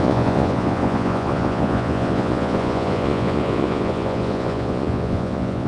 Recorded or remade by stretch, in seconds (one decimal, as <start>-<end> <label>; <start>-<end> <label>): 0.0-5.7 remade